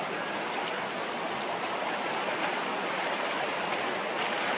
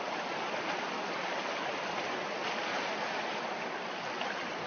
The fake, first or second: second